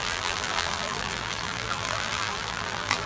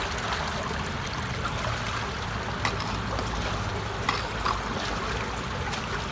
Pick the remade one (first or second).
first